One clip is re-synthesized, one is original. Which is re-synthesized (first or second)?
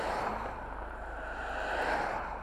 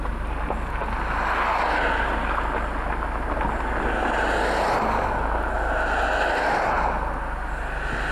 first